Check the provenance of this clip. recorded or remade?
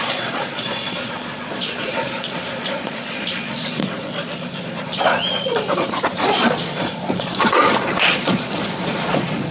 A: remade